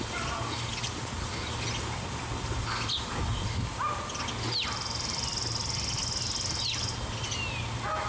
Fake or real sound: real